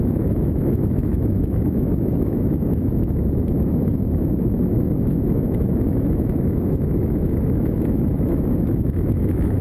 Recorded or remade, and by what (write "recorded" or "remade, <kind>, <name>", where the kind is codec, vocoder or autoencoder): remade, autoencoder, DAC-VAE